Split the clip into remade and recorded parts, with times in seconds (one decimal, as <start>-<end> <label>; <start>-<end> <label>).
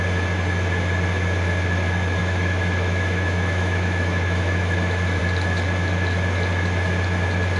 0.0-2.2 recorded; 2.2-5.2 remade; 5.2-7.6 recorded